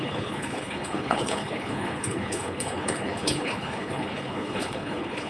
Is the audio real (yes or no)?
no